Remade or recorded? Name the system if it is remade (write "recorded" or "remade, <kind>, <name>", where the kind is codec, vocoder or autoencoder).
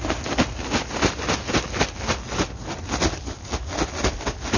recorded